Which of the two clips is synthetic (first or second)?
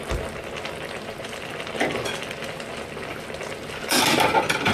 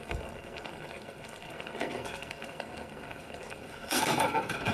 second